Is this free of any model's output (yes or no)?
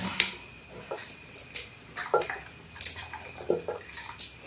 yes